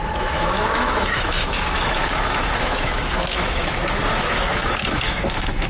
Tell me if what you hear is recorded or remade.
remade